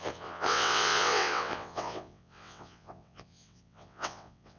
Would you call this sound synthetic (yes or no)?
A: yes